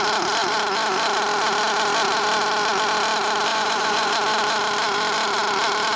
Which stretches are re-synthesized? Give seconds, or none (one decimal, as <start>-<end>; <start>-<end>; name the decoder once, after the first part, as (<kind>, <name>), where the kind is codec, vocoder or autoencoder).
3.5-4.1 (vocoder, Vocos)